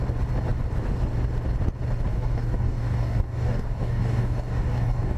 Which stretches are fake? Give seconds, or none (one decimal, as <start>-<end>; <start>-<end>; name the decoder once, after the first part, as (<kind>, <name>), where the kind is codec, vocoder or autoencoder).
2.1-5.2 (codec, DAC)